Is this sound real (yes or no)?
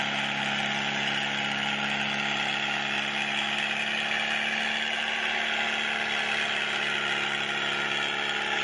yes